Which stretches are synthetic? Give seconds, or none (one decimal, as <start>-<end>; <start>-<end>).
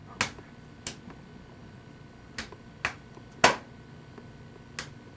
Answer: none